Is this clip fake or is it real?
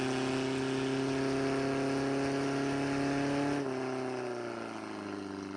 real